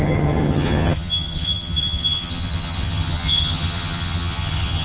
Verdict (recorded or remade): remade